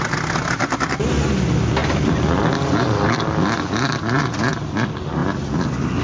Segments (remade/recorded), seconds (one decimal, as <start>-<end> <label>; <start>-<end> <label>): 0.0-6.0 recorded